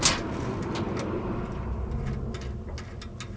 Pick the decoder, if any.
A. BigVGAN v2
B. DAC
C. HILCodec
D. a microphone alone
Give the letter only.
D